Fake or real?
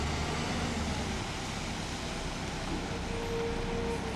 real